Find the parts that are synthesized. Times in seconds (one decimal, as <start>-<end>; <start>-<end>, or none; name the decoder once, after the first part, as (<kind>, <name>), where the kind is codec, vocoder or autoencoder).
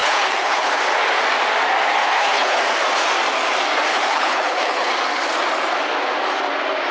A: 0.0-0.8 (codec, HILCodec); 2.0-2.6; 3.9-4.9